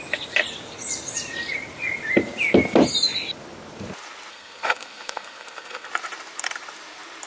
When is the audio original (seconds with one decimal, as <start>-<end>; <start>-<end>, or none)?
0.0-4.3; 5.9-7.3